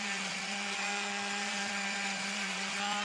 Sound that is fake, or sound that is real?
fake